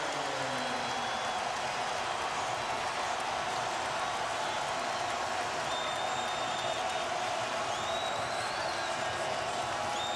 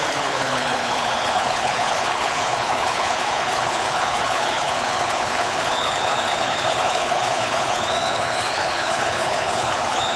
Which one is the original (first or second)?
first